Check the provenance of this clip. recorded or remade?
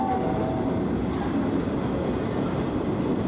recorded